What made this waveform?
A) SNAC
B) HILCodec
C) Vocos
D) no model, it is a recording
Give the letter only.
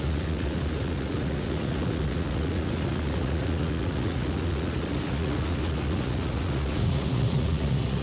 C